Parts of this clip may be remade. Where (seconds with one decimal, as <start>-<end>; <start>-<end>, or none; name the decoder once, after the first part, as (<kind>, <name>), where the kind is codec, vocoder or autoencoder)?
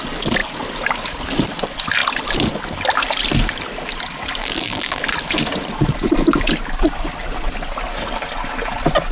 4.4-5.0 (vocoder, BigVGAN v2)